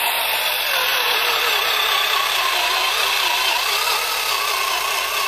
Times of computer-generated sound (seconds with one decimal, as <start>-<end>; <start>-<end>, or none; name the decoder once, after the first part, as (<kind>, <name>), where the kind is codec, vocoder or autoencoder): 0.9-4.1 (vocoder, BigVGAN v2)